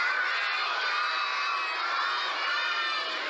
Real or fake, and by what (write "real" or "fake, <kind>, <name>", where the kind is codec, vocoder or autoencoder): fake, vocoder, BigVGAN v2